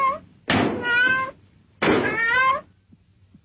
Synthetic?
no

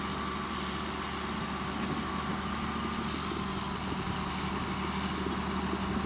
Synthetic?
no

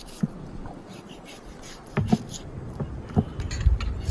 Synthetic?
no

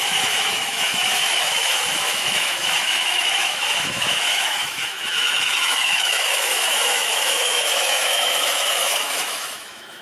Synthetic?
yes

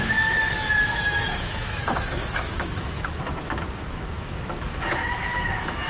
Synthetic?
yes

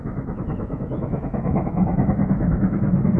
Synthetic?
yes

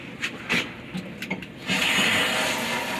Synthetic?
no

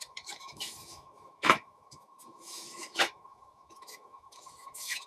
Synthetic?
yes